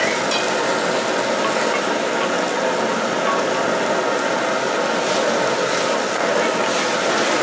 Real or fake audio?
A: real